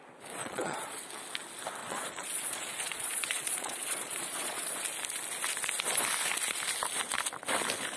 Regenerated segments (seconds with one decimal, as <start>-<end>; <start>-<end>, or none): 0.4-1.0; 1.8-4.8